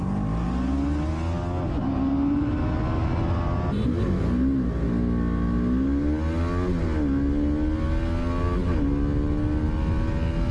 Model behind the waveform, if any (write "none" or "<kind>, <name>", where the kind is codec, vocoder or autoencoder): none